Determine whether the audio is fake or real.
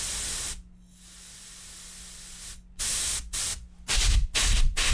real